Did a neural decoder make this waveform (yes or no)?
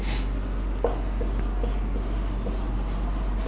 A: no